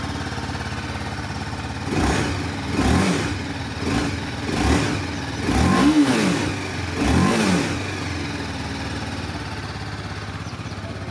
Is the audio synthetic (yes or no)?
no